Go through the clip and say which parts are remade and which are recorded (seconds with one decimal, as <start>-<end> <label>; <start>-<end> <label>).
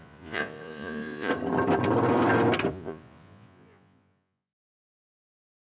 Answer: 0.0-1.3 remade; 1.3-2.7 recorded; 2.7-5.8 remade